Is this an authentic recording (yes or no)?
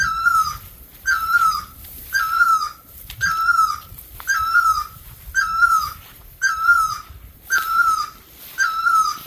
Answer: yes